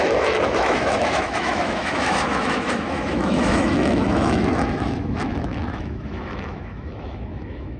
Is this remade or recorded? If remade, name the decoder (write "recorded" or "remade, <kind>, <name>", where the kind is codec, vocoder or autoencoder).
remade, autoencoder, DAC-VAE